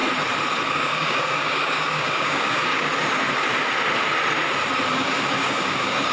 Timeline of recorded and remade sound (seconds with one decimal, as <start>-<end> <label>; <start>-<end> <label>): 0.0-0.7 recorded; 0.7-2.9 remade; 2.9-4.9 recorded; 4.9-6.1 remade